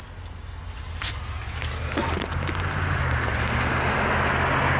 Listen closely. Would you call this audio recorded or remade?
recorded